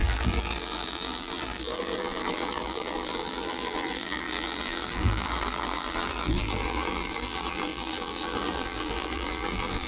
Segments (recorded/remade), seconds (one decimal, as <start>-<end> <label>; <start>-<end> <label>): 0.0-9.9 remade